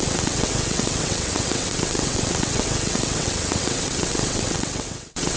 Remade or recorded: remade